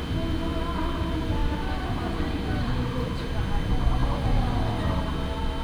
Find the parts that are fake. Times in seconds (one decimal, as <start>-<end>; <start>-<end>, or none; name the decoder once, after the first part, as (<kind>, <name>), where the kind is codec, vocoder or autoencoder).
1.4-3.4 (vocoder, BigVGAN v2); 4.0-5.0